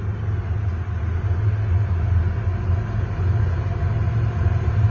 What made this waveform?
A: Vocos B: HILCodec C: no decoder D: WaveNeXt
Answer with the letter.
C